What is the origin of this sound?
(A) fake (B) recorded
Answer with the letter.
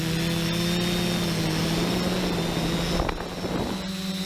B